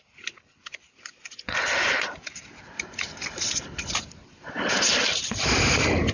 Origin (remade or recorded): recorded